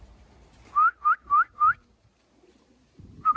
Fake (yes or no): no